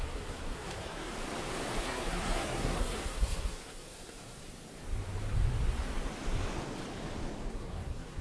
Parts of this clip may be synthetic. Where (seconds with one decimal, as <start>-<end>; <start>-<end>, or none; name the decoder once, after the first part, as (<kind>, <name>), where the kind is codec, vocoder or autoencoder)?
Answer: 0.0-1.1 (codec, SNAC); 1.8-4.4; 7.5-8.2